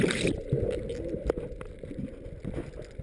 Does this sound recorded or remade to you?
recorded